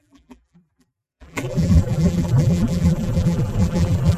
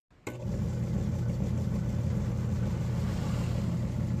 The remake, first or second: first